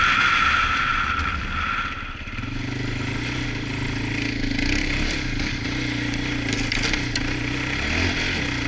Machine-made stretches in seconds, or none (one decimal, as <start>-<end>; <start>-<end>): none

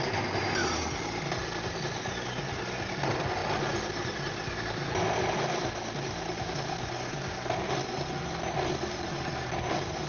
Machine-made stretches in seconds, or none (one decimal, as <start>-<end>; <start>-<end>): none